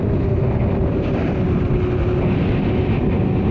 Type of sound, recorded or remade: recorded